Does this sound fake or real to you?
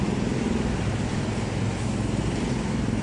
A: real